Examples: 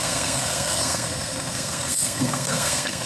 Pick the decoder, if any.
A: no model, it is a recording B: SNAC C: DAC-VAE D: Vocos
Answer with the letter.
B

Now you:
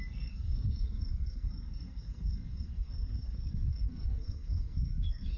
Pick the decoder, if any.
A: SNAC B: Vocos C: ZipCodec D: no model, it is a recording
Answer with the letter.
A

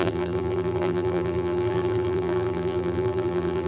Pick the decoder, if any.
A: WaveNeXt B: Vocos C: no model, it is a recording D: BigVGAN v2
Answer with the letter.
D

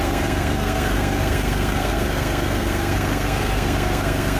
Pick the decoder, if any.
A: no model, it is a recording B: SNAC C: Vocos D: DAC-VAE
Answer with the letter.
B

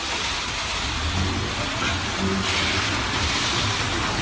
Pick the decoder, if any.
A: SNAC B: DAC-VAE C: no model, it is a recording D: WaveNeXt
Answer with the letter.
C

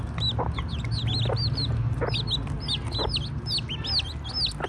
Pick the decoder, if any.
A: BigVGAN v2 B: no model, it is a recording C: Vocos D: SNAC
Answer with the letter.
B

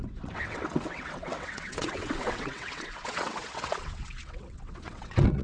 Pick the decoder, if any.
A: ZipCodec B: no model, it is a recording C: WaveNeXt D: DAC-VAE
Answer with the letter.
C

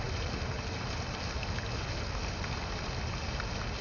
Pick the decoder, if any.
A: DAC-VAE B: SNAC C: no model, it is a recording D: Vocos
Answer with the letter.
C